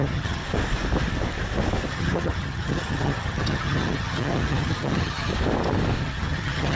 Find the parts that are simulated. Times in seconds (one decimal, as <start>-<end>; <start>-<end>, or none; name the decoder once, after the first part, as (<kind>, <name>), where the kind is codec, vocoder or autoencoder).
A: 0.0-0.4 (vocoder, HiFi-GAN); 1.9-5.3; 6.0-6.8